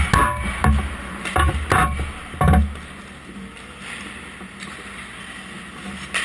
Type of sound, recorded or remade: recorded